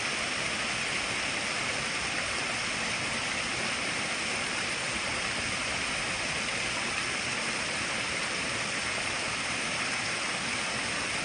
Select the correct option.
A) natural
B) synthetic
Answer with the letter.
A